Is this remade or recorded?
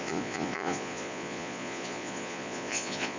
remade